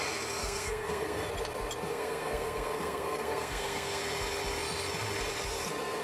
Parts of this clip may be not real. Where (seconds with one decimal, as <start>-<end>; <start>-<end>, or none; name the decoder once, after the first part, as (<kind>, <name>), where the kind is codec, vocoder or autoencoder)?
0.4-1.3 (codec, SNAC); 1.9-4.0